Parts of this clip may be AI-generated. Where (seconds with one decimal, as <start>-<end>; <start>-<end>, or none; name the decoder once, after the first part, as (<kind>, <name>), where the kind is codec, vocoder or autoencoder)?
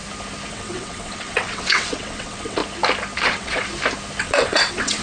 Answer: 0.5-2.6 (vocoder, WaveNeXt); 3.2-3.7; 4.2-5.0